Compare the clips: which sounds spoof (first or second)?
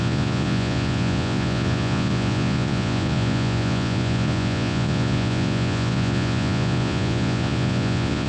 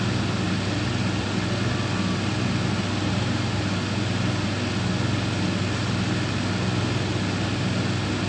first